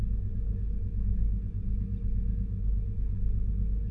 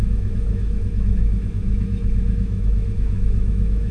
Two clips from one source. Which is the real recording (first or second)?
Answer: first